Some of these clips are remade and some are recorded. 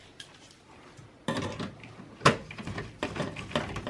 recorded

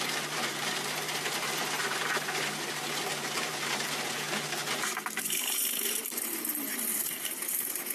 remade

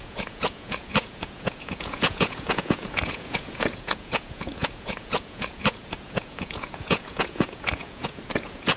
remade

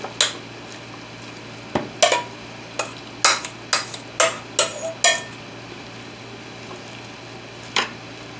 recorded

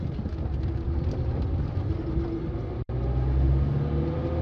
recorded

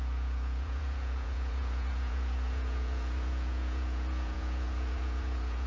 remade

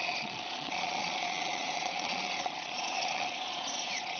remade